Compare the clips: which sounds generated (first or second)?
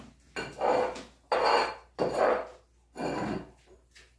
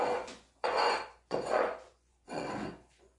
second